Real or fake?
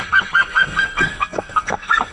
fake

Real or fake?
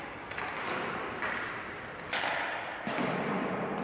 fake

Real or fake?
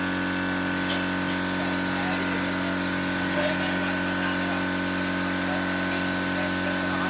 real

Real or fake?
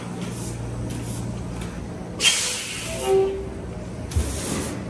real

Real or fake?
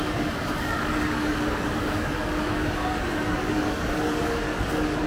fake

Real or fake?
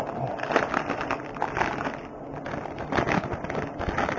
real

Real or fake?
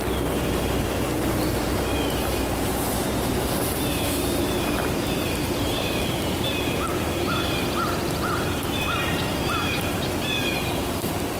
fake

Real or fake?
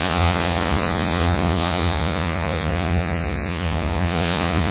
fake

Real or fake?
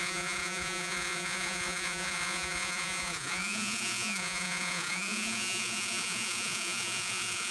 fake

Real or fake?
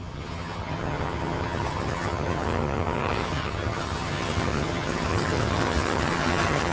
fake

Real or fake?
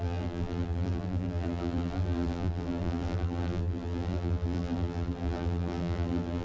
fake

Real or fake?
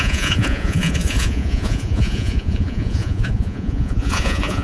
fake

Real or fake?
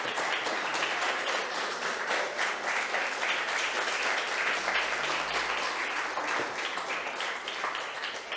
real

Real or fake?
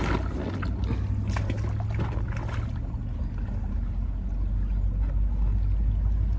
real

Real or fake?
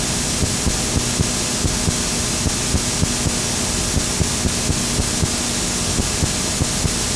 real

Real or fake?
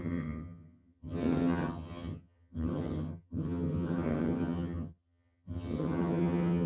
fake